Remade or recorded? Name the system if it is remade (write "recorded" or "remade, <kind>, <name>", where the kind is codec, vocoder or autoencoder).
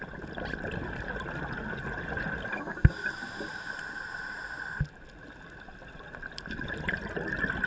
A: recorded